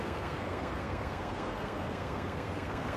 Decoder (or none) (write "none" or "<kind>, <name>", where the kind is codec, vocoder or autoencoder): codec, SNAC